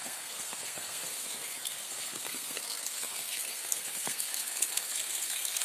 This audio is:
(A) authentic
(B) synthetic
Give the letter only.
B